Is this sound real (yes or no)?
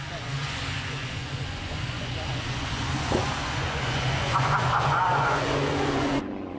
no